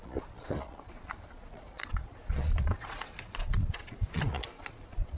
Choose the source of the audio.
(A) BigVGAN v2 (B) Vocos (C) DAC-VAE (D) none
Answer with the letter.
B